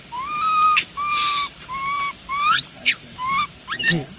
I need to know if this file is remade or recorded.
remade